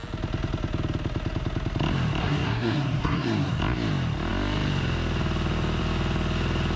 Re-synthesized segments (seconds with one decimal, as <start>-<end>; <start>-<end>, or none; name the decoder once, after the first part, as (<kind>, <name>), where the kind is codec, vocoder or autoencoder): 2.2-3.6 (codec, SNAC)